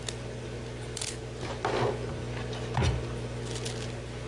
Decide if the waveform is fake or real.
real